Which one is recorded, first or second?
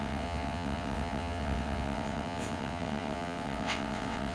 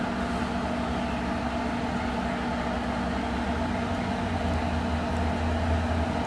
second